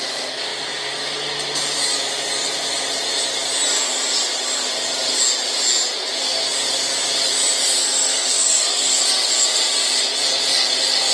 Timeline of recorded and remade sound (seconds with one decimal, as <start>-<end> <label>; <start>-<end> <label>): 0.0-7.8 recorded; 7.8-9.0 remade; 9.0-11.1 recorded

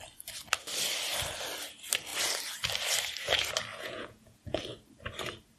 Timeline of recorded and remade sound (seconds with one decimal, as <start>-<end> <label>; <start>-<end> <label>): 0.0-3.7 recorded; 3.7-4.6 remade; 4.6-5.6 recorded